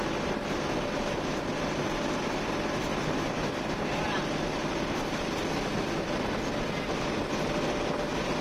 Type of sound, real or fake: real